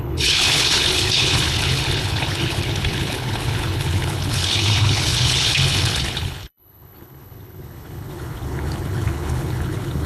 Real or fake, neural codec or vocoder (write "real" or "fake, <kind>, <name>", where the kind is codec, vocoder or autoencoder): fake, codec, HILCodec